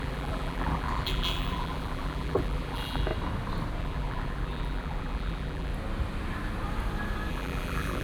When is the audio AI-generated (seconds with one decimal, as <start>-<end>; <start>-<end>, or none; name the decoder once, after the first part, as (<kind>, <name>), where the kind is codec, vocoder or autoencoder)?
0.0-3.1 (vocoder, BigVGAN v2); 3.8-5.7; 7.3-8.0